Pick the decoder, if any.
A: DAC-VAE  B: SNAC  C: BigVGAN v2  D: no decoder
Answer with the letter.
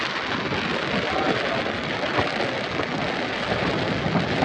D